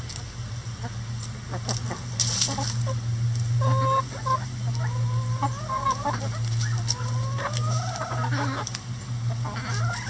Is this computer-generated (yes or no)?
no